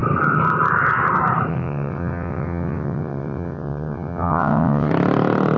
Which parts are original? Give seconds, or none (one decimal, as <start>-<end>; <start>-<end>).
0.0-1.5; 4.9-5.6